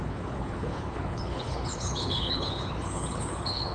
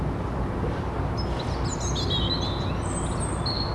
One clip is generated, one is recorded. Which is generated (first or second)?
first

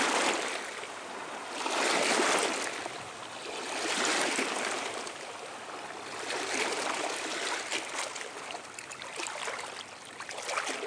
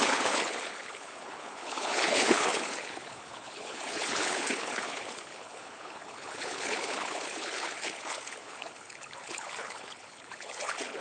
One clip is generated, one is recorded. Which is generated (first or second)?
second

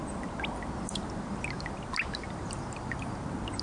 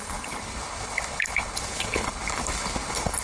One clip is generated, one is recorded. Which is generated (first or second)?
second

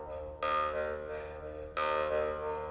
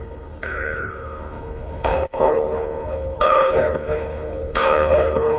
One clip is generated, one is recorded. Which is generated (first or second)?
second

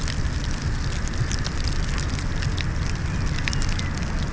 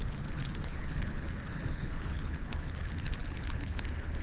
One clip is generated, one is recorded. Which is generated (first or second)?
second